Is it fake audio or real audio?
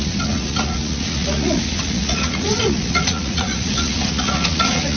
fake